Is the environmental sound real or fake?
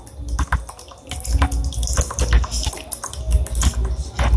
real